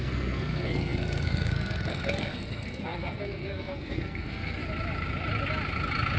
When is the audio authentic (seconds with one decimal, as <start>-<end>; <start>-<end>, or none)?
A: 4.6-6.2